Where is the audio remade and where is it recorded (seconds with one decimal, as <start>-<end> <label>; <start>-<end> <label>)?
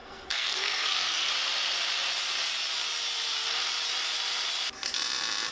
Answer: 0.0-1.3 remade; 1.3-5.5 recorded